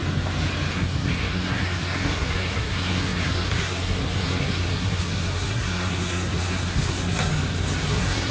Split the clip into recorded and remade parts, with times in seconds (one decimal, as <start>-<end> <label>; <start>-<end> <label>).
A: 0.0-0.7 recorded; 0.7-7.3 remade; 7.3-7.9 recorded; 7.9-8.3 remade